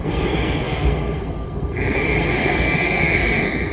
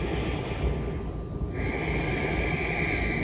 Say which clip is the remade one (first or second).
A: first